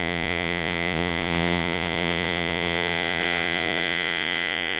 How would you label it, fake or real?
fake